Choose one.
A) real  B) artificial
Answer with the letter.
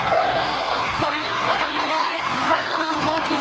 B